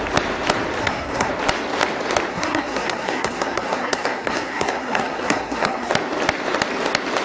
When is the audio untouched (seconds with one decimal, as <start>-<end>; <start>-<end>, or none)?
0.0-0.8; 1.3-2.3; 5.9-7.2